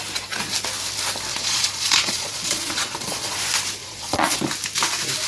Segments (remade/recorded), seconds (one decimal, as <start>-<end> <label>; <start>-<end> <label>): 0.0-1.3 recorded; 1.3-3.4 remade; 3.4-3.8 recorded; 3.8-4.4 remade; 4.4-5.3 recorded